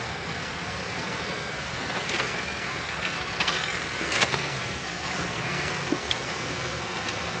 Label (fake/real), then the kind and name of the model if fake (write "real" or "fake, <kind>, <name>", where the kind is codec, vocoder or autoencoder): fake, codec, SNAC